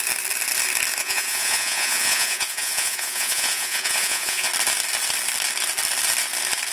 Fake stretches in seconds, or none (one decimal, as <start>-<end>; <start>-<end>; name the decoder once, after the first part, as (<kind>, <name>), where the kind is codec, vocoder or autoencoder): 1.0-4.5 (vocoder, Vocos)